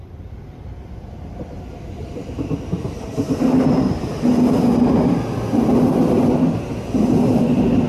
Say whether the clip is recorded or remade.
recorded